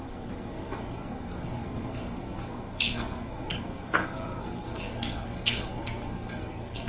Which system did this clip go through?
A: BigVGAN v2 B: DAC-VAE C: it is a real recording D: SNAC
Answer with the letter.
D